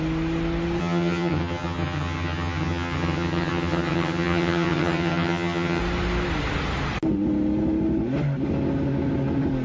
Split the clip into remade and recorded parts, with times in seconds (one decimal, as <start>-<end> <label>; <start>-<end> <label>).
0.0-0.8 recorded; 0.8-5.8 remade; 5.8-9.6 recorded